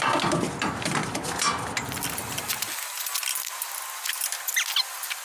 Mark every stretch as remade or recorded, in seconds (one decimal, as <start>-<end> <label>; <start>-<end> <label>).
0.0-5.2 recorded